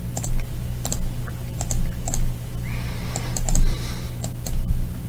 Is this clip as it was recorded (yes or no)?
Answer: yes